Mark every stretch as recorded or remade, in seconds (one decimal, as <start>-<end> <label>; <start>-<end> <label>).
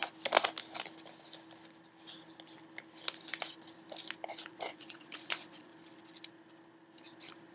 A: 0.0-4.5 recorded; 4.5-5.7 remade; 5.7-7.5 recorded